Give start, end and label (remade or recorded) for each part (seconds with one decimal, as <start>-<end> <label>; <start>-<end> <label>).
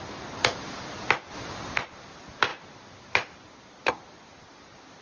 0.0-5.0 recorded